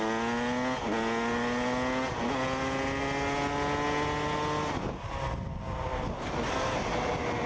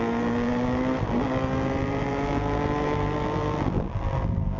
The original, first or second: first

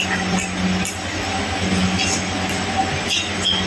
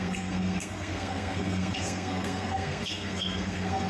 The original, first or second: first